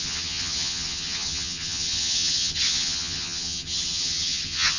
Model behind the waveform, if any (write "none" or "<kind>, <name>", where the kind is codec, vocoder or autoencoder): vocoder, HiFi-GAN